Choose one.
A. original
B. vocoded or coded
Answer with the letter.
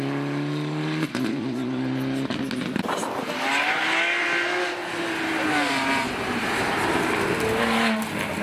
A